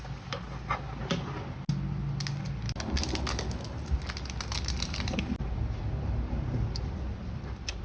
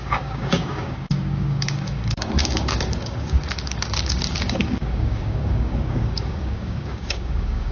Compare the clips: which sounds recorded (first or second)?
first